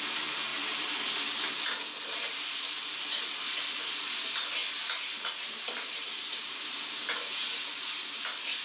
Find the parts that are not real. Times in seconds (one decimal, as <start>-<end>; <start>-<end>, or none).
none